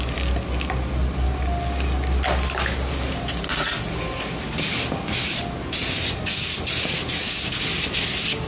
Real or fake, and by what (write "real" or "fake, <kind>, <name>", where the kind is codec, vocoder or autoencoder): real